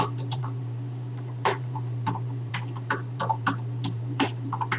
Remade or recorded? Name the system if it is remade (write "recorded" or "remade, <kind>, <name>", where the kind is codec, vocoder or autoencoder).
remade, vocoder, BigVGAN v2